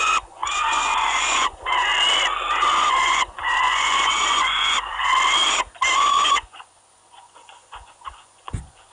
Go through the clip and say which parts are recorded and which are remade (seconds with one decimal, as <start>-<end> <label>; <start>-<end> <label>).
0.0-1.9 remade; 1.9-2.5 recorded; 2.5-5.1 remade; 5.1-5.9 recorded; 5.9-8.9 remade